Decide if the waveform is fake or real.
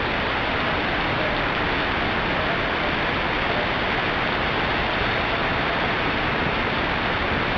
real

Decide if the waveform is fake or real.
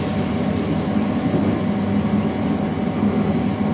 real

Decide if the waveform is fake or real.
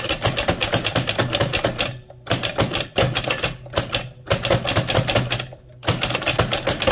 real